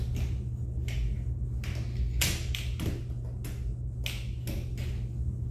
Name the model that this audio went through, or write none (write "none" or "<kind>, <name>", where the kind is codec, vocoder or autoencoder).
none